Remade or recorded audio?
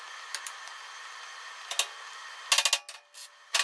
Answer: recorded